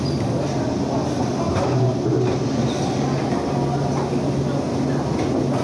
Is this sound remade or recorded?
recorded